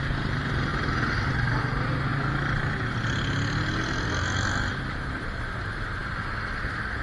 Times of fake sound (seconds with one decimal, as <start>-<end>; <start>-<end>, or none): none